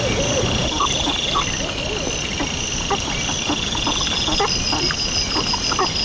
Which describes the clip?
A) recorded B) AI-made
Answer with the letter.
A